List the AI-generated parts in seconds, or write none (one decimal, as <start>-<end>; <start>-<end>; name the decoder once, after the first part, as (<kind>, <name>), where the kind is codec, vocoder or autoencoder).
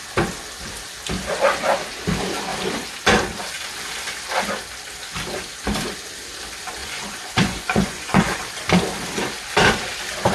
6.8-8.4 (vocoder, Vocos)